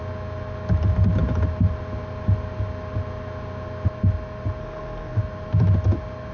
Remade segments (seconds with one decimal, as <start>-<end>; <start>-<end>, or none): 4.6-5.2